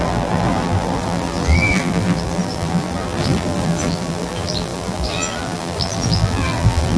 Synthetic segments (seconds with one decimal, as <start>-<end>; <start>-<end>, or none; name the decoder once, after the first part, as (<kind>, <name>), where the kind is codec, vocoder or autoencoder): 0.0-7.0 (vocoder, BigVGAN v2)